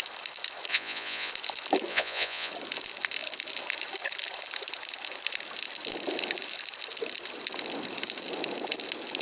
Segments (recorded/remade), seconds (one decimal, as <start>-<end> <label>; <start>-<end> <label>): 0.0-0.7 recorded; 0.7-1.3 remade; 1.3-1.9 recorded; 1.9-2.5 remade; 2.5-9.2 recorded